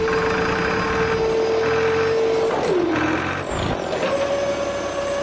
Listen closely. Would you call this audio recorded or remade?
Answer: recorded